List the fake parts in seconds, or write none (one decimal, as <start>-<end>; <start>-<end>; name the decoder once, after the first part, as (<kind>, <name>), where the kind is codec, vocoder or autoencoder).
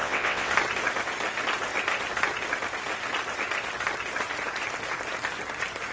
0.0-0.5 (vocoder, WaveNeXt)